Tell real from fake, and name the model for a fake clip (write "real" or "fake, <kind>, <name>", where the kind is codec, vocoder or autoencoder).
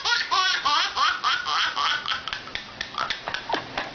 real